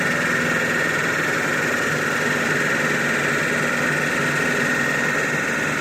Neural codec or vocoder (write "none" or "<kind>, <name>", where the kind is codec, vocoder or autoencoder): none